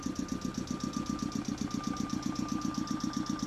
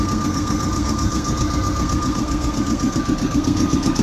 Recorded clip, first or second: first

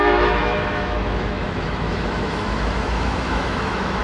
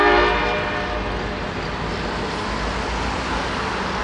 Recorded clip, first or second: second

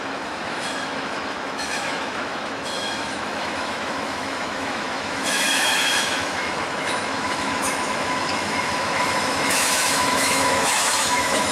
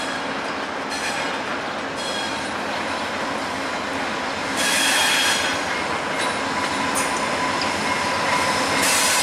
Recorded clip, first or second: second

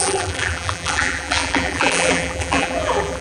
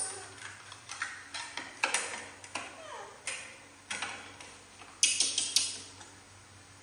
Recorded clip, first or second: second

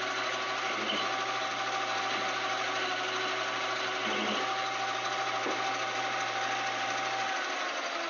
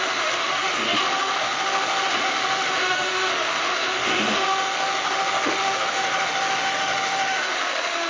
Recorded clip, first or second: first